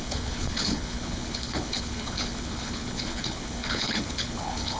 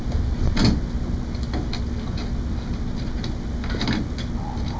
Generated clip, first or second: first